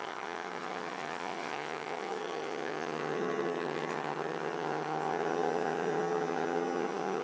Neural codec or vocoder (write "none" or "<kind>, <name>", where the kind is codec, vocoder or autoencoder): vocoder, HiFi-GAN